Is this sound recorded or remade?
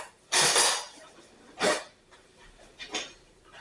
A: recorded